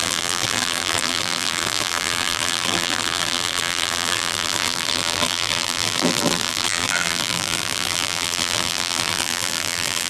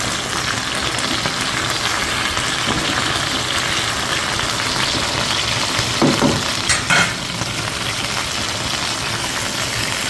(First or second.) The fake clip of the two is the first